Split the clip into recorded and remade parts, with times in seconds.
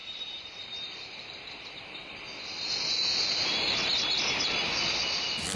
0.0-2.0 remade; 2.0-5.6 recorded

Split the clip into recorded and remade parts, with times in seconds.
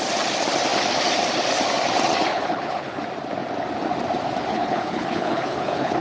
0.0-2.3 recorded; 2.3-3.0 remade; 3.0-4.5 recorded; 4.5-6.0 remade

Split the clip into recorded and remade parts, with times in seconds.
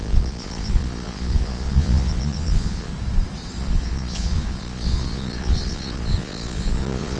0.0-2.9 remade; 2.9-3.6 recorded; 3.6-7.2 remade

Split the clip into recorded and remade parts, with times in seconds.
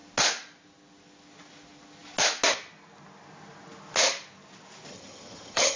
0.0-4.9 recorded; 4.9-5.8 remade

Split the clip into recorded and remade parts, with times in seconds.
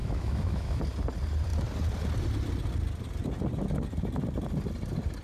0.0-0.8 remade; 0.8-5.2 recorded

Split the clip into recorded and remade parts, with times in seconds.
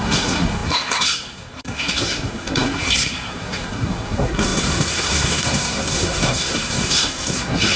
0.0-7.8 remade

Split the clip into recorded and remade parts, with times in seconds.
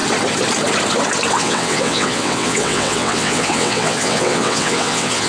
0.0-1.3 recorded; 1.3-5.3 remade